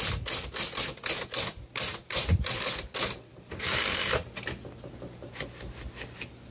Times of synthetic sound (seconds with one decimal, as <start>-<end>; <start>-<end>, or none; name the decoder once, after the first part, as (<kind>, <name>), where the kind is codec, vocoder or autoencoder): 1.9-2.7 (vocoder, BigVGAN v2)